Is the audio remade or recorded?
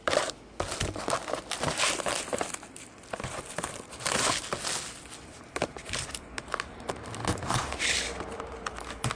recorded